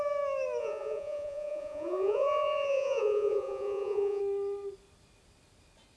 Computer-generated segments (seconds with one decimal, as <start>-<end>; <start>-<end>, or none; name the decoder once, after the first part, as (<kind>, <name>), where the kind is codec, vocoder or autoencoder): 0.6-4.2 (vocoder, Vocos)